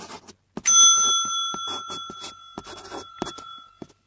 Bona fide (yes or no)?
yes